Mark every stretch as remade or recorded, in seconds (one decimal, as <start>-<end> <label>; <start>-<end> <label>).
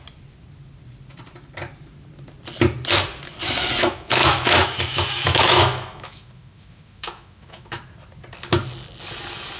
0.0-3.8 recorded; 3.8-7.8 remade; 7.8-9.6 recorded